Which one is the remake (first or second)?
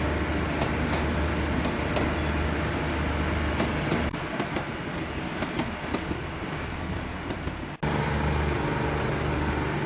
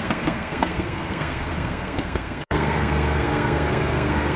second